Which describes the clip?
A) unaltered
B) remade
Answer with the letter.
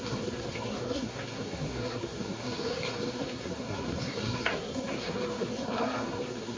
B